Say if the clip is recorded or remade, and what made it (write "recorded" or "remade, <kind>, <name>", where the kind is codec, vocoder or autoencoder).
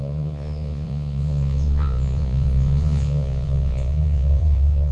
remade, vocoder, Vocos